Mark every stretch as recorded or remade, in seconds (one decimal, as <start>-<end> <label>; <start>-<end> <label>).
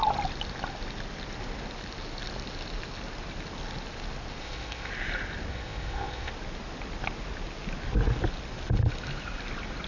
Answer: 0.0-4.4 recorded; 4.4-4.9 remade; 4.9-5.5 recorded; 5.5-6.3 remade; 6.3-9.9 recorded